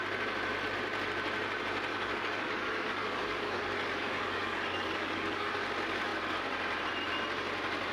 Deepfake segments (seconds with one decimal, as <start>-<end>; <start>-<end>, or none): 1.9-5.5